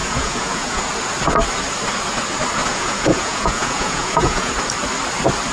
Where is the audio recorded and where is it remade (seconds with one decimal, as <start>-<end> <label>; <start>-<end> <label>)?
0.0-0.8 remade; 0.8-2.6 recorded; 2.6-4.5 remade; 4.5-5.5 recorded